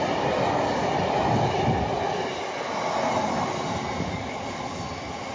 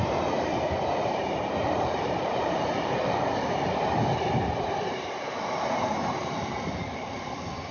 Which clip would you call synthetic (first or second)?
second